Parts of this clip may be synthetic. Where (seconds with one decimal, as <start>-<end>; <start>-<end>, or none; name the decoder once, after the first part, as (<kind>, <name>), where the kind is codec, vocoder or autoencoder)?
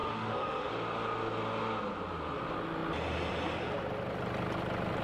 0.0-0.7 (autoencoder, DAC-VAE)